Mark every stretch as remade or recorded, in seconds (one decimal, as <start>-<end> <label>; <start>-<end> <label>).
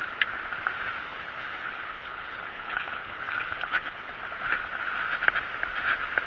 0.0-1.1 recorded; 1.1-4.2 remade; 4.2-6.3 recorded